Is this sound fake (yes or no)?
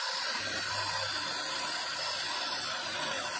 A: no